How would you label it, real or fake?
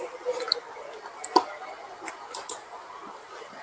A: real